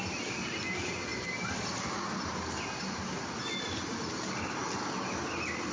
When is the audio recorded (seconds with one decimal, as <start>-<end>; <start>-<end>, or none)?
0.0-5.7